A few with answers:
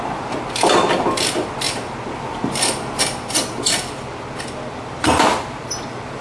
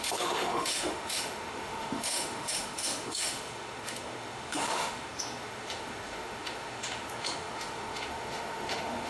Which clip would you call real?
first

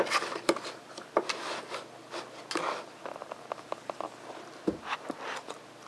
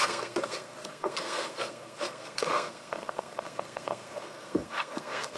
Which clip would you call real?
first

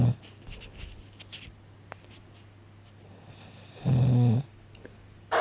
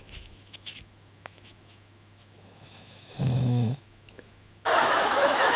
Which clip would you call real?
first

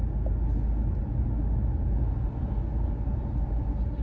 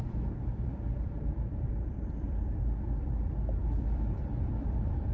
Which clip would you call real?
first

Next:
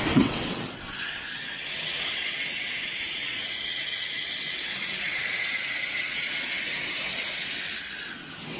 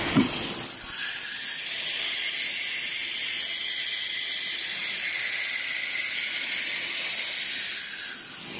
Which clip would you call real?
second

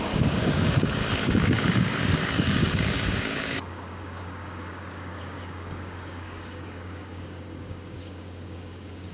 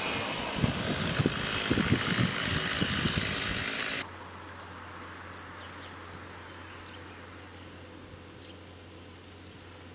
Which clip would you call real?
second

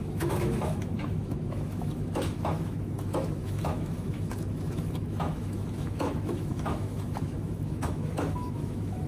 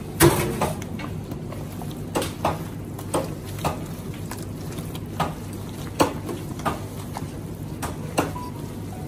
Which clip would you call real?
second